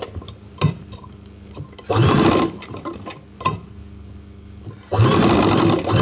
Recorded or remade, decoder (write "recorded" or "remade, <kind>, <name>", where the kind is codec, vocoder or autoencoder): recorded